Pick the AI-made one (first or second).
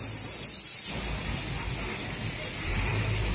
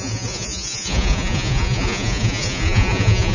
second